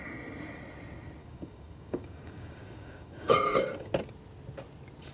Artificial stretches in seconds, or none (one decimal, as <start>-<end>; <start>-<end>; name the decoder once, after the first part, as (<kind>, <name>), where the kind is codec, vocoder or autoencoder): 1.2-3.9 (codec, DAC)